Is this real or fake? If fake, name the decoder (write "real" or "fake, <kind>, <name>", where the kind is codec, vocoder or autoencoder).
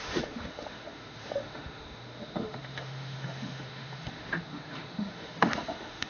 fake, autoencoder, DAC-VAE